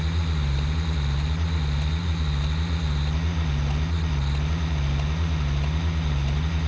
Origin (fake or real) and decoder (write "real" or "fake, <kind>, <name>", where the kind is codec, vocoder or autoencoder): real